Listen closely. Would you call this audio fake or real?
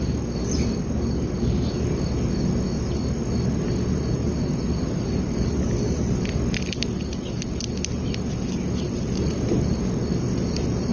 real